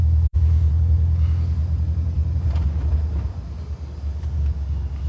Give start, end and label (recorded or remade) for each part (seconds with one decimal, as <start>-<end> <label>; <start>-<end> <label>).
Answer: 0.0-0.7 remade; 0.7-5.1 recorded